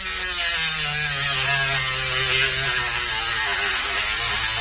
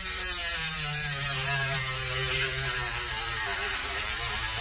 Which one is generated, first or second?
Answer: second